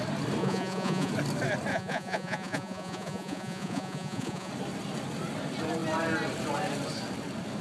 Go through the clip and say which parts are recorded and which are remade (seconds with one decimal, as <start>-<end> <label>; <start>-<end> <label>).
0.0-0.4 recorded; 0.4-1.1 remade; 1.1-1.7 recorded; 1.7-4.5 remade; 4.5-7.6 recorded